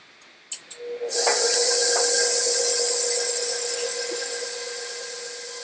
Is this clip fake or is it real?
real